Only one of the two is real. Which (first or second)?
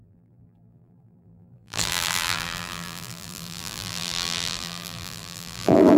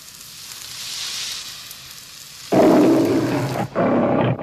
second